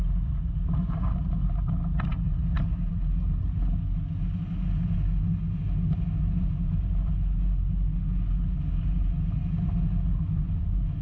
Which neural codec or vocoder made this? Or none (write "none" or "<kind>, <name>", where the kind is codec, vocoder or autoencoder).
none